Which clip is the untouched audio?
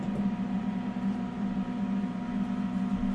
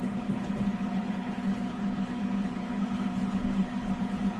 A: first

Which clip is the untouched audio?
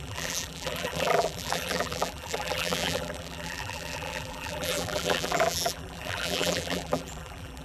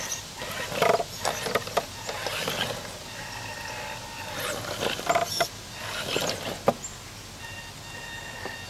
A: second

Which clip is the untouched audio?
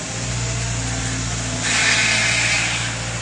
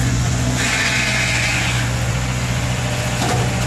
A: first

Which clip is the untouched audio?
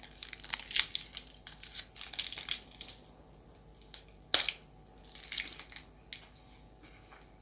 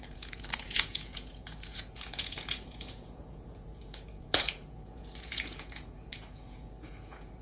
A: first